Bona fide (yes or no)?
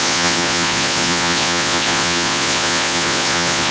no